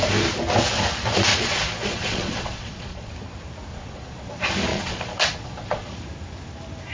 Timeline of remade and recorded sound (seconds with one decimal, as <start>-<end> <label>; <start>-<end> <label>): 0.0-1.3 recorded; 1.3-3.1 remade; 3.1-3.7 recorded; 3.7-4.3 remade; 4.3-4.7 recorded; 4.7-6.0 remade; 6.0-6.9 recorded

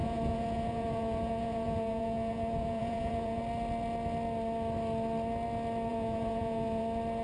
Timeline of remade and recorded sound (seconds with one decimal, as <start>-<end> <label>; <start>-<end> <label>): 0.0-3.4 remade; 3.4-5.9 recorded; 5.9-6.8 remade; 6.8-7.2 recorded

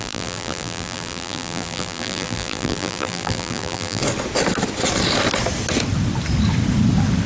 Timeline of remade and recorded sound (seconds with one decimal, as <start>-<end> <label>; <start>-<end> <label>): 0.0-4.0 remade; 4.0-7.3 recorded

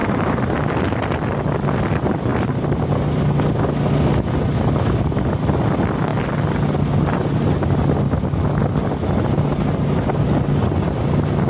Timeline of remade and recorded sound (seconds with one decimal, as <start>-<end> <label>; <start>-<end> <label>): 0.0-0.6 remade; 0.6-2.3 recorded; 2.3-2.9 remade; 2.9-11.5 recorded

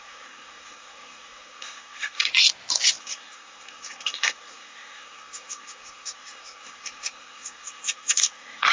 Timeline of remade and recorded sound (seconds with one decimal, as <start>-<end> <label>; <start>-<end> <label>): 0.0-2.3 remade; 2.3-3.0 recorded; 3.0-8.7 remade